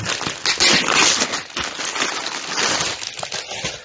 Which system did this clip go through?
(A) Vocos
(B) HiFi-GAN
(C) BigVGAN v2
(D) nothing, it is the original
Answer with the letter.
D